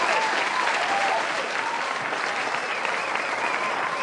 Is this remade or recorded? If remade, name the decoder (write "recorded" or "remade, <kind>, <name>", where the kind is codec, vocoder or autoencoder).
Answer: recorded